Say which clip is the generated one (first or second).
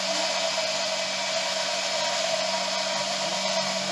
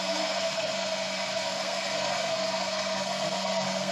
second